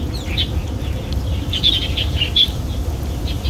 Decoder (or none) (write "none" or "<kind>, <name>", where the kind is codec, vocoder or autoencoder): none